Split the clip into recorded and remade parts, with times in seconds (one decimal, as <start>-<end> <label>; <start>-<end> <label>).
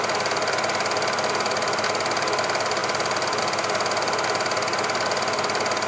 0.0-5.9 recorded